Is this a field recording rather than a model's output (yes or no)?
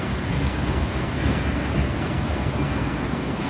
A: no